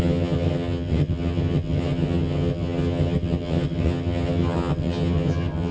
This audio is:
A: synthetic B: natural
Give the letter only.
A